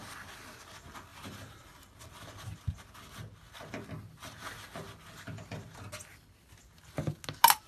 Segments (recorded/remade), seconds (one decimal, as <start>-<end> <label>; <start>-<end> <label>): 0.0-1.1 recorded; 1.1-2.1 remade; 2.1-7.7 recorded